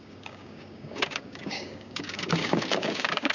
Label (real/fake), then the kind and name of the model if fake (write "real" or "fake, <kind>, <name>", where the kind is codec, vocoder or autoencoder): fake, codec, DAC